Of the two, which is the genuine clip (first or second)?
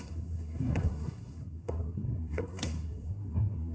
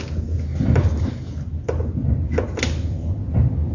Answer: second